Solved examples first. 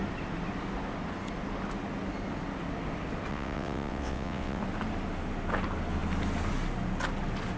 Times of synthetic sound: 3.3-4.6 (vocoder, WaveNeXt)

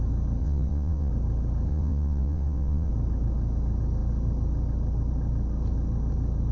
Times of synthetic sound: 0.4-1.1 (vocoder, WaveNeXt); 1.7-2.9

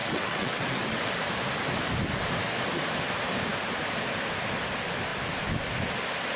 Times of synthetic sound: 0.0-1.1 (vocoder, WaveNeXt)

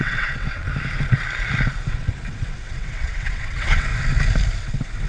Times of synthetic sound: 0.0-0.6 (vocoder, WaveNeXt); 1.9-3.9; 4.6-5.1